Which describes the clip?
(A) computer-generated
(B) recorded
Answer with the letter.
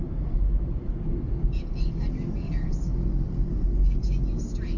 B